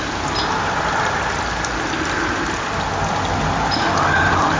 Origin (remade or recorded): recorded